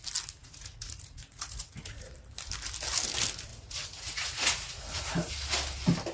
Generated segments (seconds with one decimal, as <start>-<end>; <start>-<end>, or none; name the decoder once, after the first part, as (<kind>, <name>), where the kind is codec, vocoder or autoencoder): 0.4-2.1 (vocoder, Vocos); 3.5-5.3